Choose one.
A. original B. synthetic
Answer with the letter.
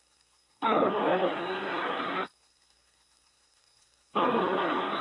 B